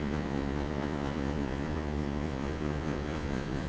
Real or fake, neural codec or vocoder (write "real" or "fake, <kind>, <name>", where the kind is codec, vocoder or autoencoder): fake, vocoder, Vocos